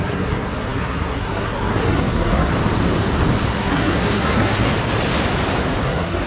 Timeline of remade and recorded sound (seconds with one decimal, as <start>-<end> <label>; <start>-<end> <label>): 0.0-2.5 remade; 2.5-3.5 recorded; 3.5-4.7 remade; 4.7-5.8 recorded; 5.8-6.3 remade